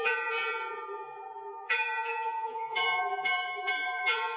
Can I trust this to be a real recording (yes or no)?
no